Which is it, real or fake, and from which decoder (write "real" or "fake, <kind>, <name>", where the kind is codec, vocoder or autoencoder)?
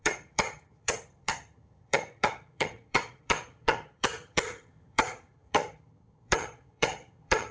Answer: fake, vocoder, HiFi-GAN